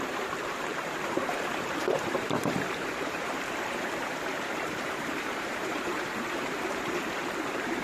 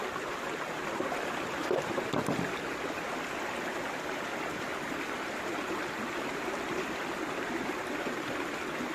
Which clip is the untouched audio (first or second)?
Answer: second